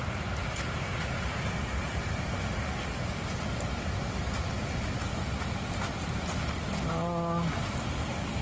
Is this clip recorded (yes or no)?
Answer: yes